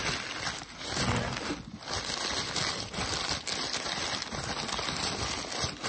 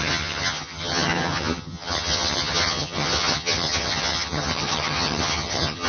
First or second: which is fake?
second